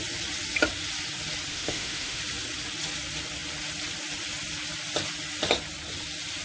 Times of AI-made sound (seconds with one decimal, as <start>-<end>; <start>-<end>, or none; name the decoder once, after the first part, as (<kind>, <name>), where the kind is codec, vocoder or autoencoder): 1.5-2.2 (autoencoder, DAC-VAE)